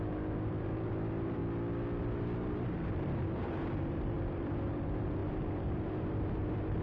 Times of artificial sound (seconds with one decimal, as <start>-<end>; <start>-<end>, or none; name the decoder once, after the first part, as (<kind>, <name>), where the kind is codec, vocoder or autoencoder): 0.0-1.4 (vocoder, BigVGAN v2); 2.0-6.8